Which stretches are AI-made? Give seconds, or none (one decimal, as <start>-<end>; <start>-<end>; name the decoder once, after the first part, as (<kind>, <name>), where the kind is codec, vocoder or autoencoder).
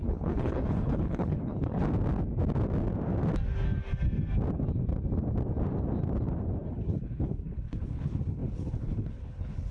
0.0-1.8 (codec, HILCodec); 6.7-9.7